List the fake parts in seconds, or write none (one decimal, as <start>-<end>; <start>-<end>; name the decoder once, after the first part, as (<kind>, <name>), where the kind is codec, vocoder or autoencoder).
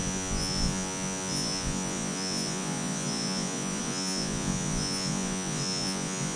0.0-6.4 (vocoder, Vocos)